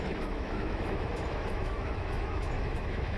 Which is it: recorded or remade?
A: remade